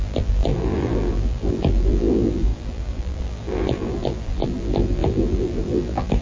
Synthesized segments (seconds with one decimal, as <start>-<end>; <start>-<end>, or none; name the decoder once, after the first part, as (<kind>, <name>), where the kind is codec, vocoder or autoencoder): 0.0-6.2 (vocoder, BigVGAN v2)